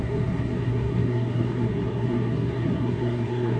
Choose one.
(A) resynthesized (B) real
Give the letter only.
A